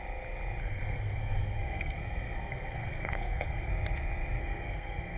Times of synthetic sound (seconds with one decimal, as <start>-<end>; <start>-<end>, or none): 0.6-3.7; 4.4-5.2